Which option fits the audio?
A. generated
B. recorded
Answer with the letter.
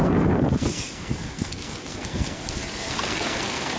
A